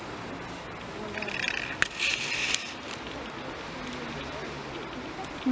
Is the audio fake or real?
real